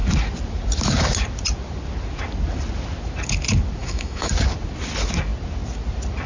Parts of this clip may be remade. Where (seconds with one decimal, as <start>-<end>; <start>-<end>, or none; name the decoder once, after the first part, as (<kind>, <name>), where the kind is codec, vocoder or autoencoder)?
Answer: 3.8-4.3 (autoencoder, DAC-VAE)